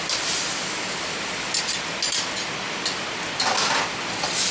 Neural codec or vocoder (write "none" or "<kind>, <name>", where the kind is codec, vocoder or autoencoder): none